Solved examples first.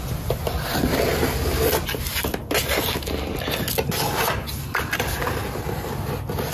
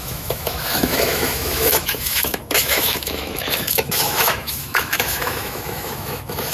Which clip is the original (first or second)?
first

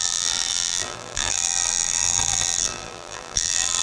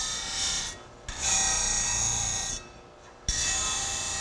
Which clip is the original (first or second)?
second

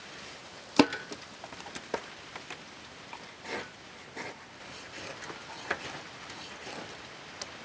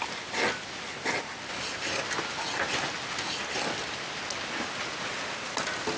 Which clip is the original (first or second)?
second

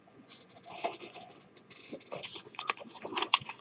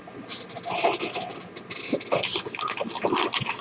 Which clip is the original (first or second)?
second